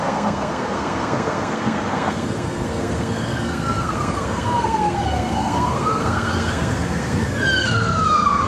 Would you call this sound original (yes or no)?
no